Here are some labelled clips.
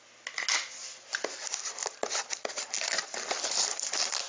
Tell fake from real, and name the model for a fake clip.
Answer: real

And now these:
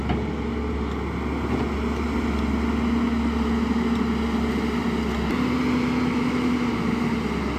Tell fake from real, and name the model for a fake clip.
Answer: real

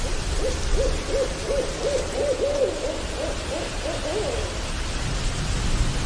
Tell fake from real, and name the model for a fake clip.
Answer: real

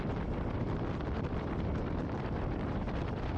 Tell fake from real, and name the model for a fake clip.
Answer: fake, vocoder, BigVGAN v2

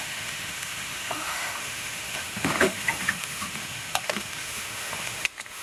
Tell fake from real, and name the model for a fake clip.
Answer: fake, autoencoder, DAC-VAE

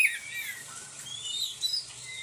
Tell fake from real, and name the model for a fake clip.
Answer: real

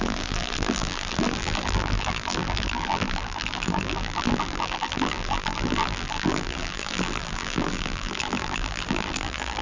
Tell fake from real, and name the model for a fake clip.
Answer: fake, vocoder, BigVGAN v2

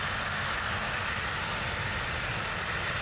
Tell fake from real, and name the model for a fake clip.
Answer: real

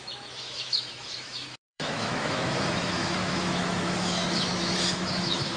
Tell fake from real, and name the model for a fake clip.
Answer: fake, autoencoder, DAC-VAE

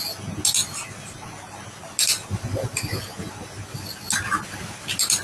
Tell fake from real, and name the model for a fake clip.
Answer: real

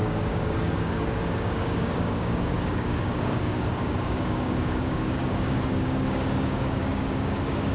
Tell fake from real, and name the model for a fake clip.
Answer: fake, codec, DAC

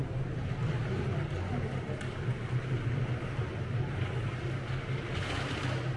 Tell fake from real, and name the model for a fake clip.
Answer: real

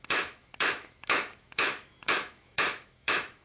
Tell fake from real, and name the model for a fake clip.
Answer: fake, autoencoder, DAC-VAE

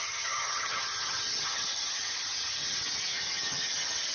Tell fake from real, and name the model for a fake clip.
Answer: fake, vocoder, HiFi-GAN